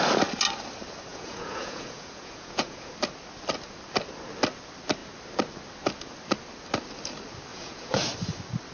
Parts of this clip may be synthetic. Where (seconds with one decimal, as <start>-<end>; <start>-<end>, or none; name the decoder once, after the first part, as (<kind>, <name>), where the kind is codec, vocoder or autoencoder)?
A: 1.1-2.9 (vocoder, Vocos); 7.5-8.0